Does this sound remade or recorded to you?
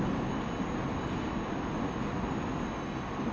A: recorded